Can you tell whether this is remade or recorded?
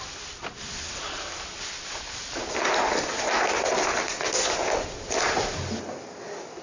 recorded